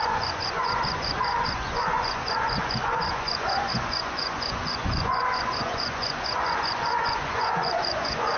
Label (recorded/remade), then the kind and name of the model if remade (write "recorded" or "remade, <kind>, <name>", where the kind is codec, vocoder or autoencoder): remade, vocoder, Vocos